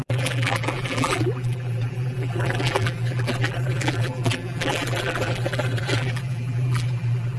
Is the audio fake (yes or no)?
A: yes